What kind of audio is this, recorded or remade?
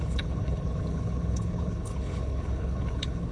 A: remade